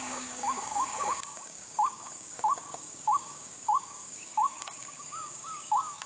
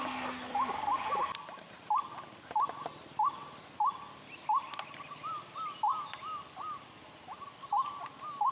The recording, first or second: second